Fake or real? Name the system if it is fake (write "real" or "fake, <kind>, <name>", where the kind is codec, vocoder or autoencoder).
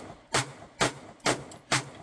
real